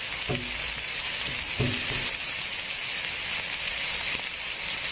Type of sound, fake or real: real